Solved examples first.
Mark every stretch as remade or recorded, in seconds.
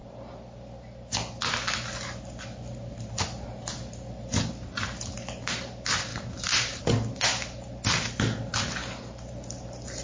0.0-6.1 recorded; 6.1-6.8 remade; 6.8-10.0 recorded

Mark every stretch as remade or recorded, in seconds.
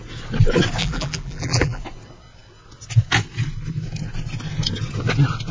0.0-0.8 recorded; 0.8-1.8 remade; 1.8-5.5 recorded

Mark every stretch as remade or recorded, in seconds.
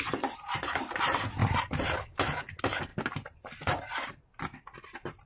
0.0-1.4 recorded; 1.4-2.2 remade; 2.2-5.3 recorded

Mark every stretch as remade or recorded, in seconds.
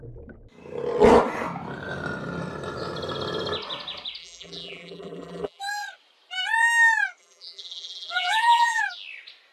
0.0-4.2 recorded; 4.2-5.6 remade; 5.6-7.2 recorded; 7.2-8.8 remade; 8.8-9.5 recorded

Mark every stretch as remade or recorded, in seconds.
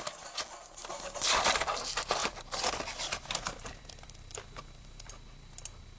0.0-2.2 recorded; 2.2-5.1 remade; 5.1-6.0 recorded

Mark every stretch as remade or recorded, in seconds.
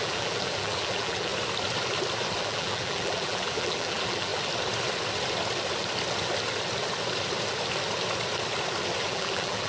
0.0-1.3 remade; 1.3-2.4 recorded; 2.4-4.3 remade; 4.3-9.0 recorded; 9.0-9.7 remade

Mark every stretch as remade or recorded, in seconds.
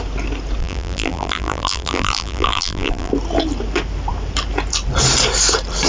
0.0-0.6 recorded; 0.6-3.1 remade; 3.1-5.9 recorded